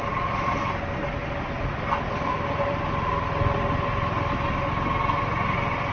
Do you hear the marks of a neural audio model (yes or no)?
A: no